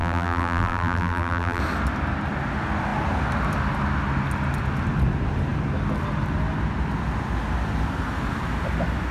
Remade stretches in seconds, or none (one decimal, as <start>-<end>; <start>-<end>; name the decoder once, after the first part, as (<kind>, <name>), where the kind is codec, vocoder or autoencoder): 0.0-1.6 (vocoder, BigVGAN v2)